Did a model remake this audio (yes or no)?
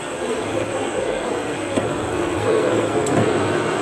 yes